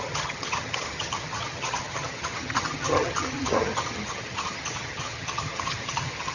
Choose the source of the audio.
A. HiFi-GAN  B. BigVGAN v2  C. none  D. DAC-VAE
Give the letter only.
A